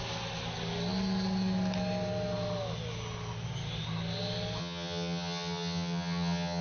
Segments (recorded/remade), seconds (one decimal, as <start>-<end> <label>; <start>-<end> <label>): 0.0-4.6 recorded; 4.6-6.6 remade